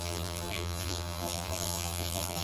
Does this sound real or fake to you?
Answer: fake